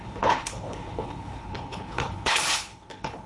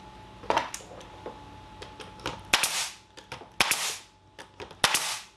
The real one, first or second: second